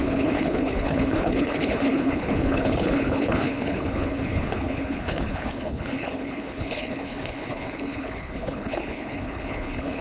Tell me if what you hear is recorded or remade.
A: remade